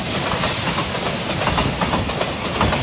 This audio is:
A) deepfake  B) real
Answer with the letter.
B